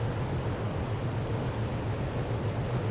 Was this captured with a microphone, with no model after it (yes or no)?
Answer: yes